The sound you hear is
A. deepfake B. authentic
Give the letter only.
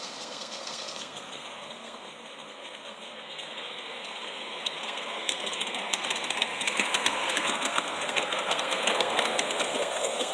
A